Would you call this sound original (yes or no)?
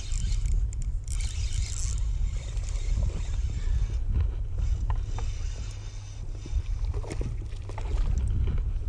yes